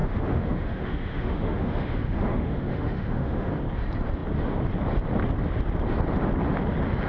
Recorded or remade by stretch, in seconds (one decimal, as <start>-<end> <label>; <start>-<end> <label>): 0.0-3.5 remade; 3.5-7.1 recorded